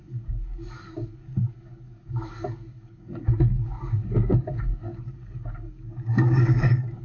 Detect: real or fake fake